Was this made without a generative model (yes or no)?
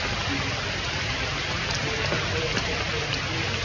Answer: yes